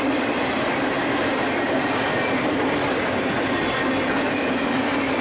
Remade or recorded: recorded